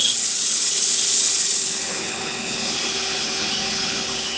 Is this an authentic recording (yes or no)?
no